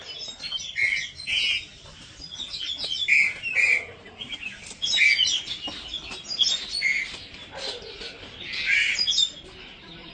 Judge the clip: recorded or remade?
recorded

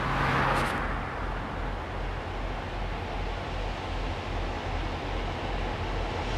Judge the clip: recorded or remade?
recorded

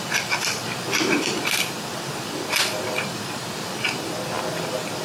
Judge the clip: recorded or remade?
remade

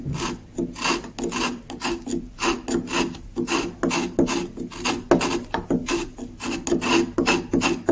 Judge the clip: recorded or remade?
recorded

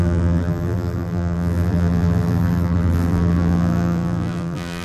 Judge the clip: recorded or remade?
remade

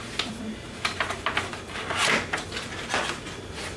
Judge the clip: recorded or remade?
recorded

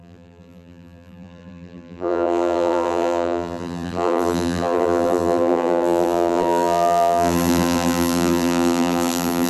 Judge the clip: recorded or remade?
remade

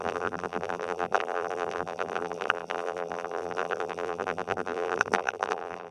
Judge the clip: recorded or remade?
remade